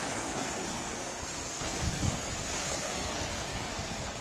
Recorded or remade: remade